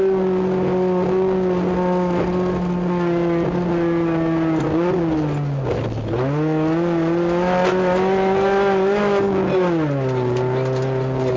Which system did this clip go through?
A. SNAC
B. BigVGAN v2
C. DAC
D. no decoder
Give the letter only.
D